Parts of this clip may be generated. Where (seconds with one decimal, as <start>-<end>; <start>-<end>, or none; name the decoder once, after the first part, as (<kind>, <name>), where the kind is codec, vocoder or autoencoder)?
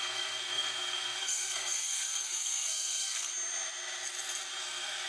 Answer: 0.0-3.3 (codec, SNAC); 4.6-5.1